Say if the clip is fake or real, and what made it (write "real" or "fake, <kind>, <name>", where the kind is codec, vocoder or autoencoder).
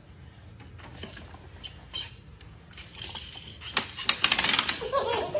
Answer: real